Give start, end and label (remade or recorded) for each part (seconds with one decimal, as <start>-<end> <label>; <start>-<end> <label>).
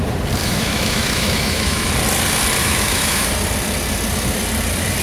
0.0-0.4 recorded; 0.4-1.9 remade; 1.9-2.6 recorded; 2.6-3.3 remade; 3.3-5.0 recorded